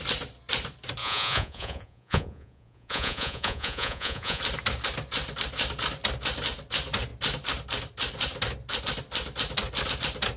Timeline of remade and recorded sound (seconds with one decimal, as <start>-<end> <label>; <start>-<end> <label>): 0.0-1.0 recorded; 1.0-4.4 remade; 4.4-10.4 recorded